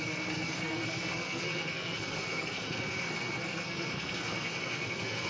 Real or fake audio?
fake